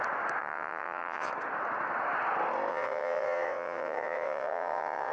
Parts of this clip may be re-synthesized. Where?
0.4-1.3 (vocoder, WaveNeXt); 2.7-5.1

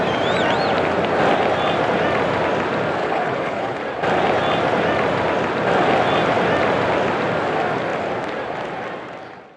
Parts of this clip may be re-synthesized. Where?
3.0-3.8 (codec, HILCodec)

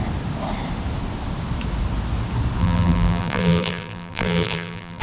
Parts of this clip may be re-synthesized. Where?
2.6-5.0 (vocoder, BigVGAN v2)